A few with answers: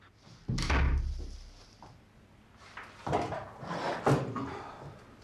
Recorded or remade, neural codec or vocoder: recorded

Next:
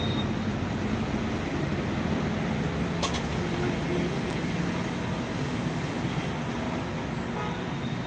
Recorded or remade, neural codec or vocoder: recorded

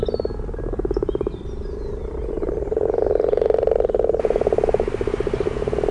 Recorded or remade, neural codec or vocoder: recorded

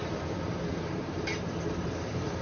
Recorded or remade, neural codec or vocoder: remade, vocoder, BigVGAN v2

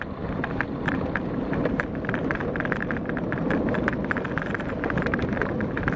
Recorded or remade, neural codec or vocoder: remade, vocoder, BigVGAN v2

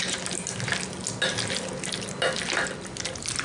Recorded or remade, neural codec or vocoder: recorded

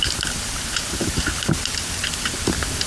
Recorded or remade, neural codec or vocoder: remade, vocoder, BigVGAN v2